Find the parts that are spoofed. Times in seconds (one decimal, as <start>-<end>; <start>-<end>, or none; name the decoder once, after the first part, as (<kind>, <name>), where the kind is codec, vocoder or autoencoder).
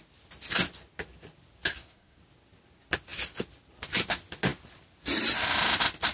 1.7-2.2 (codec, SNAC)